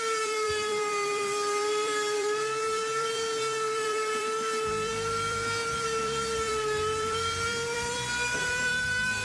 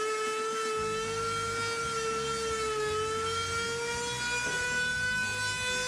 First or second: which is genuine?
second